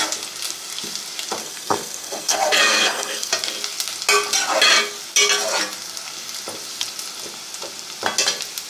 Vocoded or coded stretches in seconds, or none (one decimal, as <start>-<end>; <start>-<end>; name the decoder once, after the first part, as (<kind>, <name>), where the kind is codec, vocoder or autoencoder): 1.4-3.3 (codec, SNAC)